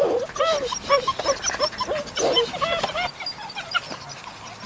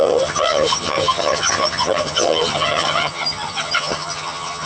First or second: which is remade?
second